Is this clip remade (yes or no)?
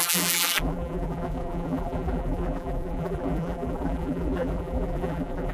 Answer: yes